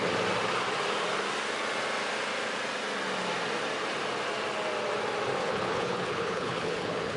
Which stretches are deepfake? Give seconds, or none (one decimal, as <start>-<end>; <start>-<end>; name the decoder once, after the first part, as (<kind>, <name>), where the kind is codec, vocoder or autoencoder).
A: 5.4-7.2 (codec, HILCodec)